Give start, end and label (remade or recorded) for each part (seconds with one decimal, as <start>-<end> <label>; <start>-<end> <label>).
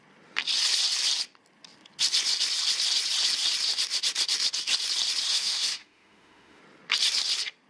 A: 0.0-5.3 recorded; 5.3-6.6 remade; 6.6-7.7 recorded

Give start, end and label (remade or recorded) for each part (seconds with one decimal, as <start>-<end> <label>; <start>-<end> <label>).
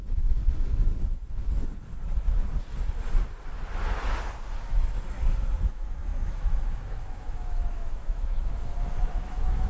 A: 0.0-0.4 remade; 0.4-5.6 recorded; 5.6-9.7 remade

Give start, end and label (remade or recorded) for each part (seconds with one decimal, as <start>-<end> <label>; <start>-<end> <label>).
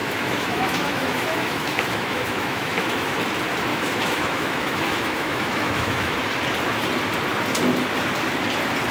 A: 0.0-3.2 remade; 3.2-3.7 recorded; 3.7-6.2 remade; 6.2-8.9 recorded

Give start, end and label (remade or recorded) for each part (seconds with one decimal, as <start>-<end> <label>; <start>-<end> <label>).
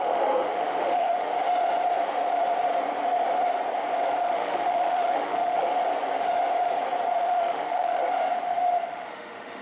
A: 0.0-1.3 remade; 1.3-4.2 recorded; 4.2-5.7 remade; 5.7-7.2 recorded; 7.2-8.0 remade; 8.0-8.9 recorded; 8.9-9.6 remade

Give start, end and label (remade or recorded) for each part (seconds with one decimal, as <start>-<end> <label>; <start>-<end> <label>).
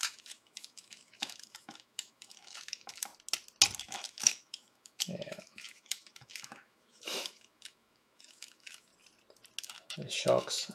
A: 0.0-3.1 remade; 3.1-3.8 recorded; 3.8-8.9 remade; 8.9-9.6 recorded; 9.6-10.7 remade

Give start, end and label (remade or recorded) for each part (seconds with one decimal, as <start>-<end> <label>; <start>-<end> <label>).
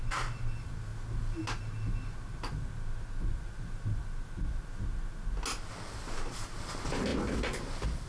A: 0.0-8.1 recorded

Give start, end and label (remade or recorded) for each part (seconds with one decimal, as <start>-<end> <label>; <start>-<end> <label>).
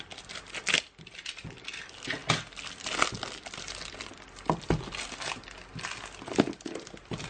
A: 0.0-7.3 recorded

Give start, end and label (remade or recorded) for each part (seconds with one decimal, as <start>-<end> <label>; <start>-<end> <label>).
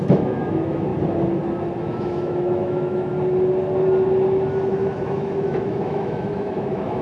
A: 0.0-0.9 remade; 0.9-1.8 recorded; 1.8-3.1 remade; 3.1-4.7 recorded; 4.7-7.0 remade